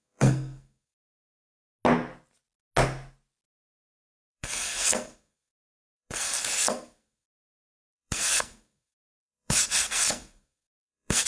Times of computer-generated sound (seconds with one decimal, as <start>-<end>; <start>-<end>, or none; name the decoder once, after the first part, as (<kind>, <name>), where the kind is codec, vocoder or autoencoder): 0.0-1.2 (codec, SNAC); 4.0-11.3